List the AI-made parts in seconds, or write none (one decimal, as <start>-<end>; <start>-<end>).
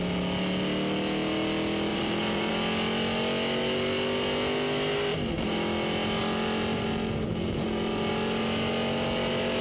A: 1.9-2.5